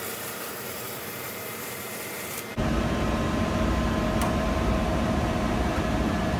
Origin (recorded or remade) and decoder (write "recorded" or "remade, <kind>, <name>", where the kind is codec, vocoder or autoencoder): remade, vocoder, BigVGAN v2